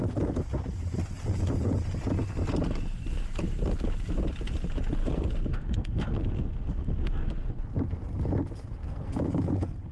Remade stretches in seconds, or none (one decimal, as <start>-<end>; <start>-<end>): 5.0-7.6; 8.8-9.4